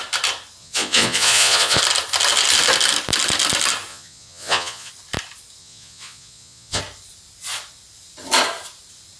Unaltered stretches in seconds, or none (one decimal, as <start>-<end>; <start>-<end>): 0.0-0.6; 1.8-3.9; 4.9-5.6; 6.8-9.2